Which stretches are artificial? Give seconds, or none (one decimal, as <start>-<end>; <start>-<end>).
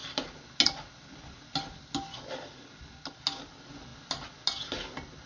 none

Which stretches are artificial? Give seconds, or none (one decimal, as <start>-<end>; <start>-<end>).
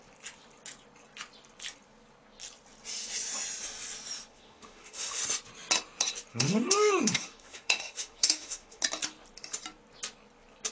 4.3-5.2; 6.3-8.8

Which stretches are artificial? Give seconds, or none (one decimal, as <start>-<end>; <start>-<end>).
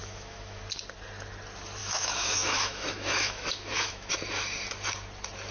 0.0-0.6; 1.8-4.1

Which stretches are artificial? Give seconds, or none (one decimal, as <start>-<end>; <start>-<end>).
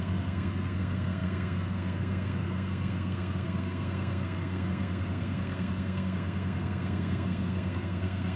0.0-8.4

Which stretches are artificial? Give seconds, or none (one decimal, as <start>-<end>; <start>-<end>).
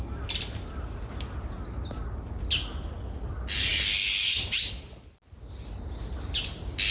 none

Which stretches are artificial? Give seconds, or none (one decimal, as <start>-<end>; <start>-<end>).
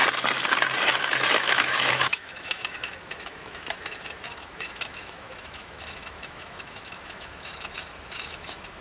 1.3-8.8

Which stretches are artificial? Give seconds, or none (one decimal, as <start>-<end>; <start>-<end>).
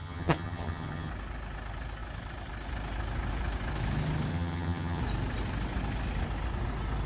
0.0-1.1; 4.3-5.0